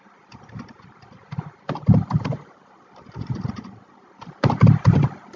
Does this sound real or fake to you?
fake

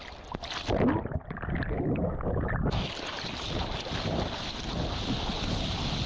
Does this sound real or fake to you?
real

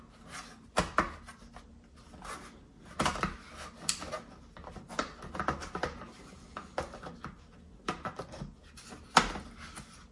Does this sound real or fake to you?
real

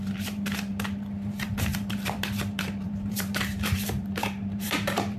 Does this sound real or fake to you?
fake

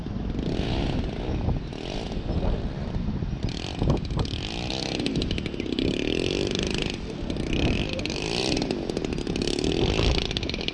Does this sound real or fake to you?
real